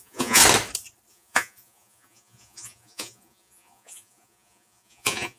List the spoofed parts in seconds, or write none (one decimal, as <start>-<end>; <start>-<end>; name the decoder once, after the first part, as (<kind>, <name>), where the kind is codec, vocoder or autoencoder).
0.0-0.4 (vocoder, Vocos); 1.1-5.4